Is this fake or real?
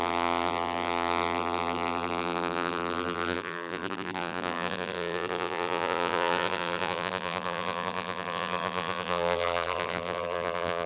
fake